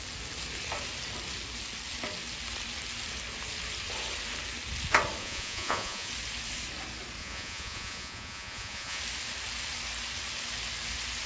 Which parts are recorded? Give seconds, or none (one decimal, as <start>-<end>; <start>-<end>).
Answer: 0.0-5.2; 6.1-7.2; 9.0-11.3